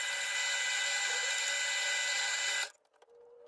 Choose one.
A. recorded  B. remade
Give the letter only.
A